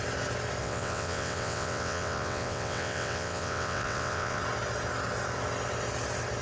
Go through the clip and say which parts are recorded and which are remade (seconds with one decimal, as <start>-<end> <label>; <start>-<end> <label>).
0.0-0.6 recorded; 0.6-4.4 remade; 4.4-6.4 recorded